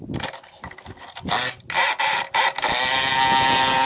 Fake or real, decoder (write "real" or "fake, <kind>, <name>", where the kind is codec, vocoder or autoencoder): real